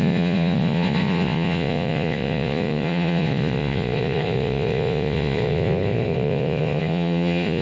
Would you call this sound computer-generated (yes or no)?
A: yes